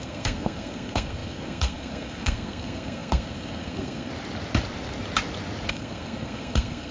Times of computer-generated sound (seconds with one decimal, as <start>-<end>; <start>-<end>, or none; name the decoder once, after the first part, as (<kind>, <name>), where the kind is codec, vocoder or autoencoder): 0.0-4.1 (codec, SNAC); 5.7-6.9